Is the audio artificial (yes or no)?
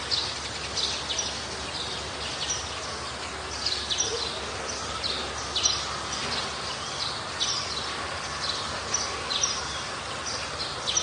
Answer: no